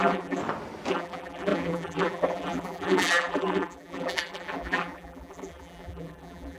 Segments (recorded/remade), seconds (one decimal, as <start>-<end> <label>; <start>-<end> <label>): 0.0-0.4 remade; 0.4-0.9 recorded; 0.9-6.6 remade